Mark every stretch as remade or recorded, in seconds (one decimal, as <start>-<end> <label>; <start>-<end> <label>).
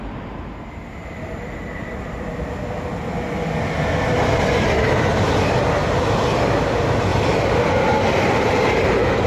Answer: 0.0-9.3 recorded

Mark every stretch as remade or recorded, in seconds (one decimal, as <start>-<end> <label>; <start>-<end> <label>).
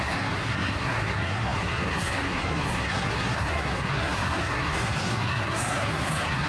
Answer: 0.0-6.5 remade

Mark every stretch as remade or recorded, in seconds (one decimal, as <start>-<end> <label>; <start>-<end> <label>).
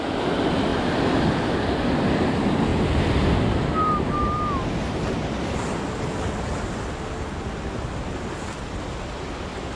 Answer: 0.0-9.8 recorded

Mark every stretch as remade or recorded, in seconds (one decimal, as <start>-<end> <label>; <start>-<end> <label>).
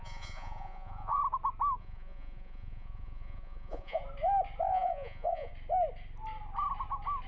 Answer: 0.0-1.2 remade; 1.2-1.8 recorded; 1.8-4.0 remade; 4.0-4.7 recorded; 4.7-5.5 remade; 5.5-7.3 recorded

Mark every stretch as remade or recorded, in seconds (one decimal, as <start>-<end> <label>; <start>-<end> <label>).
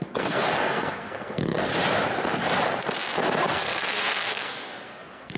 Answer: 0.0-1.7 remade; 1.7-3.5 recorded; 3.5-5.4 remade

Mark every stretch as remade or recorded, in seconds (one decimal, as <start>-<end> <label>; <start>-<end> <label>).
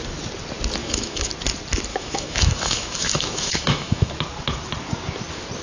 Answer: 0.0-0.8 recorded; 0.8-1.3 remade; 1.3-1.9 recorded; 1.9-4.1 remade; 4.1-5.6 recorded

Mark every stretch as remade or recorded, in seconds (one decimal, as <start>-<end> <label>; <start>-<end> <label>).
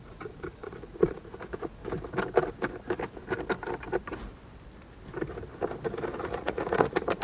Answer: 0.0-1.8 remade; 1.8-6.1 recorded; 6.1-7.2 remade